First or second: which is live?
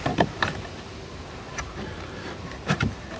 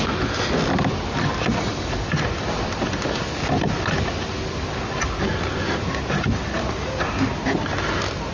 second